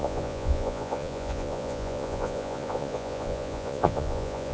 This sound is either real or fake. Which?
fake